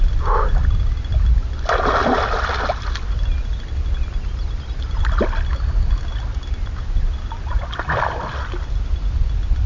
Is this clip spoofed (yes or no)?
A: no